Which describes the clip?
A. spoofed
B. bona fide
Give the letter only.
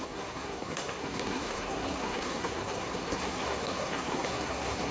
A